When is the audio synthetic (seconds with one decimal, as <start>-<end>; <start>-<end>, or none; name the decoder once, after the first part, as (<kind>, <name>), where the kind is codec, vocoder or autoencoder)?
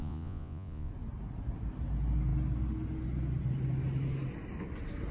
0.0-0.9 (vocoder, Vocos)